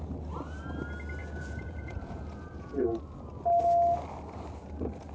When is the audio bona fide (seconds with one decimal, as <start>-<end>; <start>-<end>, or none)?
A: 0.0-1.2; 2.8-5.1